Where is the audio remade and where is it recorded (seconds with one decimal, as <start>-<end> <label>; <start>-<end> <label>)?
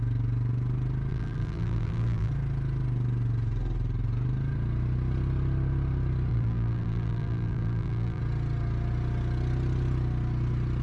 0.0-1.1 recorded; 1.1-2.3 remade; 2.3-6.3 recorded; 6.3-8.2 remade; 8.2-10.8 recorded